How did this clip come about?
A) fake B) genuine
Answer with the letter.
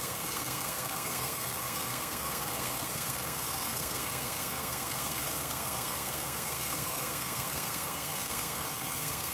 A